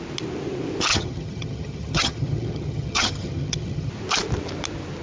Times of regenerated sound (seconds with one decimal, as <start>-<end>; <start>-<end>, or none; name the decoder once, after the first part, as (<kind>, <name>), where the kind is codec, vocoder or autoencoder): 0.9-3.9 (vocoder, HiFi-GAN)